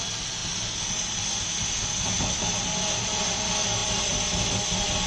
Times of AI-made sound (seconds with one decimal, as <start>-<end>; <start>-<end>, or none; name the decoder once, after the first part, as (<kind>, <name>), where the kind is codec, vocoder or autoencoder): none